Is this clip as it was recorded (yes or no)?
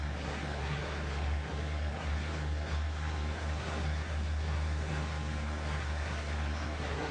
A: no